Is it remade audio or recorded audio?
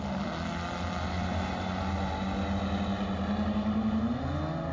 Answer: recorded